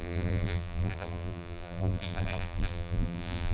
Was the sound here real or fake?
fake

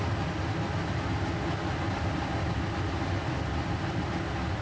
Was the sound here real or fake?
real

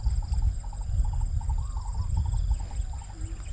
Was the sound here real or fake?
real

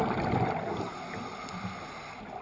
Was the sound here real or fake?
real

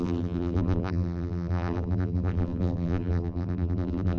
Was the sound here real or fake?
fake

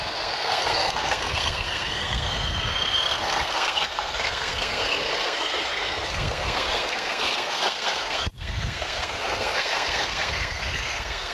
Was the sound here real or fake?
fake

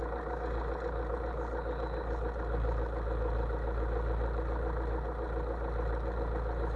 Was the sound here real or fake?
real